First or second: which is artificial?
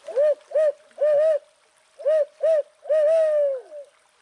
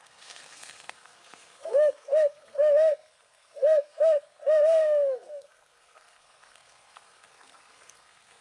second